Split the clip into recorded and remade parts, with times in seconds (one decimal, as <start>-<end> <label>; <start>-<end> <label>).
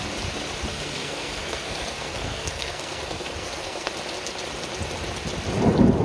0.0-0.7 recorded; 0.7-3.9 remade; 3.9-6.0 recorded